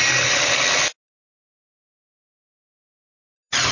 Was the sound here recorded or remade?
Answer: recorded